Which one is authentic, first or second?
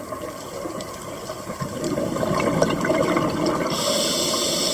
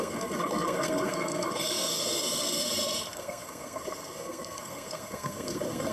first